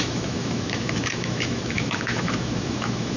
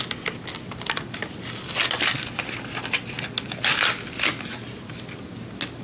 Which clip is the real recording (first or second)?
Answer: second